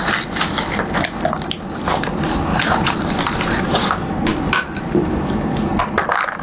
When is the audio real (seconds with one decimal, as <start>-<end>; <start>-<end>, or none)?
0.0-2.5; 3.9-6.4